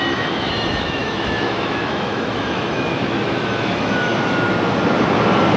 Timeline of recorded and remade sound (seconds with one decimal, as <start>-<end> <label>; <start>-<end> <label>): 0.0-4.1 remade; 4.1-5.6 recorded